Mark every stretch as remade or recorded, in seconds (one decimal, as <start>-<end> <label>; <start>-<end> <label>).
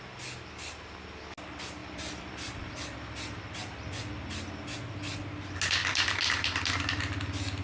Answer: 0.0-1.8 recorded; 1.8-2.7 remade; 2.7-5.8 recorded; 5.8-6.8 remade; 6.8-7.6 recorded